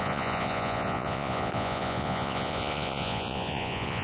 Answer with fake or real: fake